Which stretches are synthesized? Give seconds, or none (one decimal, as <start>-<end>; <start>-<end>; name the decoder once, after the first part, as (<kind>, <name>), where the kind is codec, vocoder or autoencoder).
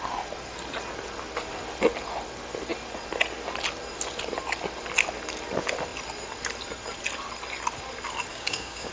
8.3-8.9 (codec, DAC)